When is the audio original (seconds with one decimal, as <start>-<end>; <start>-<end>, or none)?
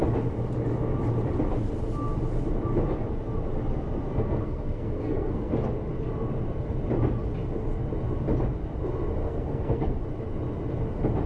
0.0-4.1; 5.5-9.2; 10.0-11.3